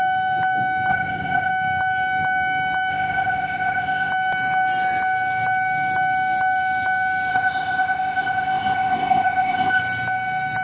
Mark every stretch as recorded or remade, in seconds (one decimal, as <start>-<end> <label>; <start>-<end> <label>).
0.0-0.9 recorded; 0.9-1.5 remade; 1.5-2.9 recorded; 2.9-4.1 remade; 4.1-7.3 recorded; 7.3-9.8 remade; 9.8-10.6 recorded

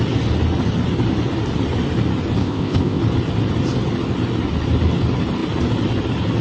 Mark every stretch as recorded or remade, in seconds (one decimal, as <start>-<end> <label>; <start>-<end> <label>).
0.0-2.4 recorded; 2.4-3.0 remade; 3.0-6.4 recorded

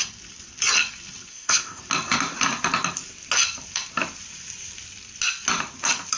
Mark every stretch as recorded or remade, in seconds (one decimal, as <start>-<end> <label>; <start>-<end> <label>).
0.0-1.3 recorded; 1.3-1.8 remade; 1.8-6.2 recorded

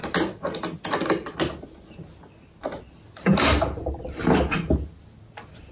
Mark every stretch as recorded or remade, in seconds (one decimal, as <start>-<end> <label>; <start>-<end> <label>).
0.0-5.7 recorded